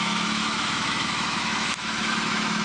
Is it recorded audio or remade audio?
remade